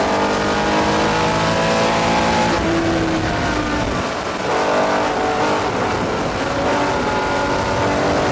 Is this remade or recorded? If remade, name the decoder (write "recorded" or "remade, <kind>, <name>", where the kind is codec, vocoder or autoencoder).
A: recorded